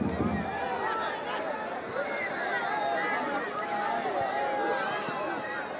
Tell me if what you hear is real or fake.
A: real